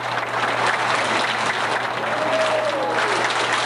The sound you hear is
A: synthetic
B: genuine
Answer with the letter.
B